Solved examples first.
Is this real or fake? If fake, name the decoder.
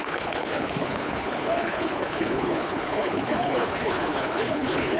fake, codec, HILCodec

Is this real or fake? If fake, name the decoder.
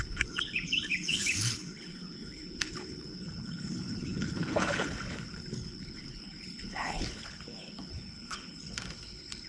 fake, codec, HILCodec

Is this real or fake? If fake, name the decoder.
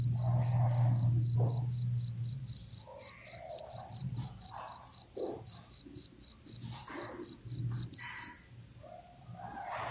real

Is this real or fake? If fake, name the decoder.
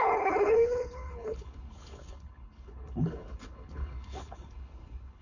fake, codec, HILCodec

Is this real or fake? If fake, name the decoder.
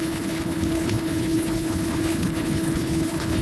fake, codec, HILCodec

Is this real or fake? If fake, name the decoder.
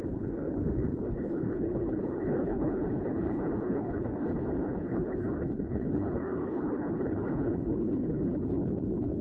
fake, codec, HILCodec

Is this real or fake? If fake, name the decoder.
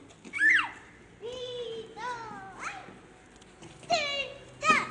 real